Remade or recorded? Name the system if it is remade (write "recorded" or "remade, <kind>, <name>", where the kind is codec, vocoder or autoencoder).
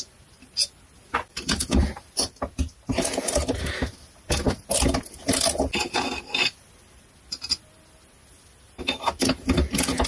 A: recorded